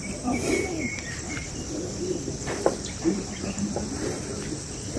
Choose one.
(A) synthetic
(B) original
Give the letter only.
A